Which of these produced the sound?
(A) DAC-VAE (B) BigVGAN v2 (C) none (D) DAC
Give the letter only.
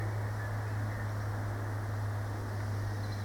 C